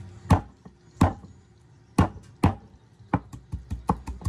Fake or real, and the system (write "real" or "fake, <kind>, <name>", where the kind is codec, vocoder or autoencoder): real